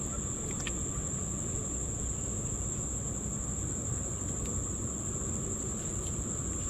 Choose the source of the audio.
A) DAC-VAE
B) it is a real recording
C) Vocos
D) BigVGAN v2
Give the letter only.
B